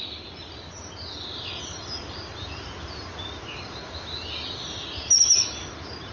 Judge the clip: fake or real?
real